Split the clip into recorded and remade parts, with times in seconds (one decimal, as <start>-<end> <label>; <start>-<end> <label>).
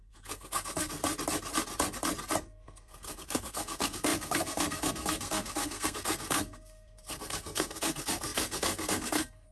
0.0-1.0 remade; 1.0-2.4 recorded; 2.4-9.5 remade